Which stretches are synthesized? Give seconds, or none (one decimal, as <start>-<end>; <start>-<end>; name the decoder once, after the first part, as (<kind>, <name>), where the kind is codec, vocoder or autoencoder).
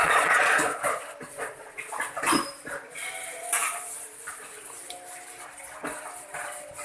0.0-0.8 (vocoder, Vocos); 1.3-1.9